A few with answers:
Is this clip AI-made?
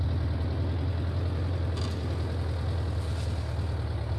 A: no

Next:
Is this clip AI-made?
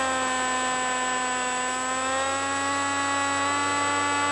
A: no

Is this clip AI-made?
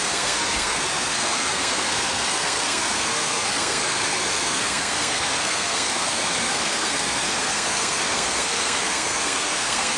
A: yes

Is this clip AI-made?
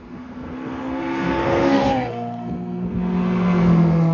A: yes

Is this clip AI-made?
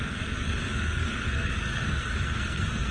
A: yes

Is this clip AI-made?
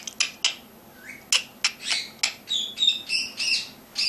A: no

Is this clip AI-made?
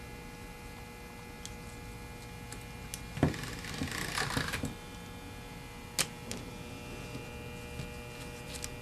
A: no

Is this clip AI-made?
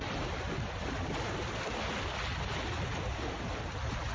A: no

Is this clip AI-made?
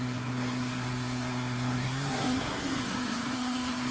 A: yes